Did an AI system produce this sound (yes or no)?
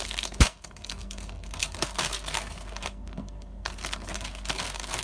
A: yes